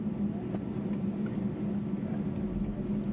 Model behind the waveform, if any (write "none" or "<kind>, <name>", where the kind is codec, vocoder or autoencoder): none